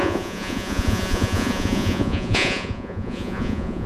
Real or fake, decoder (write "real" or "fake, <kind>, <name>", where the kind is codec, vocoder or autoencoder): fake, vocoder, Vocos